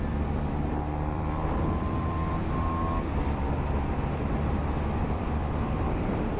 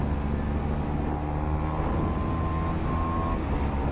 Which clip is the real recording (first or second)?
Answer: second